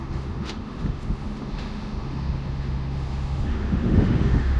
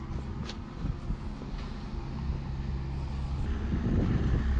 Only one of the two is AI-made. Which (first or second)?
first